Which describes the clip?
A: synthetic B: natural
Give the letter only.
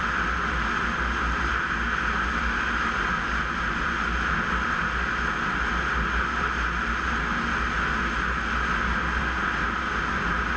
B